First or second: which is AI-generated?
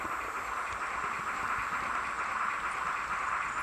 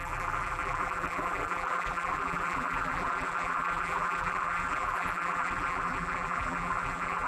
second